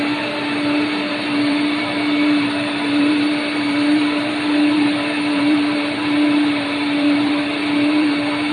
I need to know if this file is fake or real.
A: fake